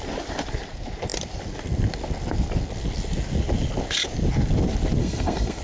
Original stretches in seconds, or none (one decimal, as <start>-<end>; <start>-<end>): 0.0-5.0